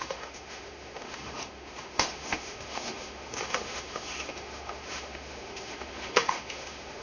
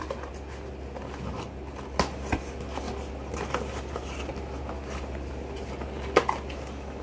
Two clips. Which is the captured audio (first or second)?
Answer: second